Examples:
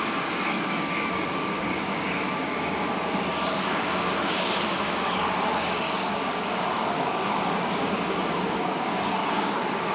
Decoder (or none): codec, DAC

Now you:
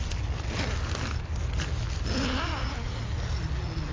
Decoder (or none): none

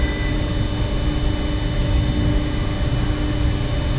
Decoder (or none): none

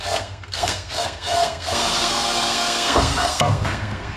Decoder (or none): codec, SNAC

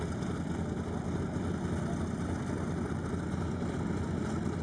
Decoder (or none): none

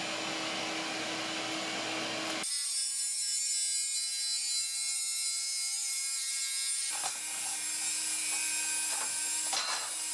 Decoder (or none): none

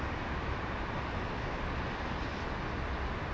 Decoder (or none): none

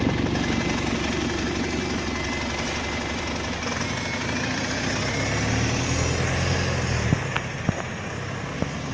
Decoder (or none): none